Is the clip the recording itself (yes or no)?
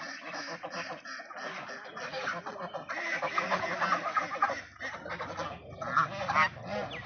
yes